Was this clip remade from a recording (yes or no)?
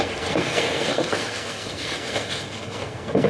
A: yes